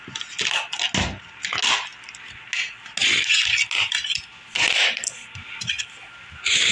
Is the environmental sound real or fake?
real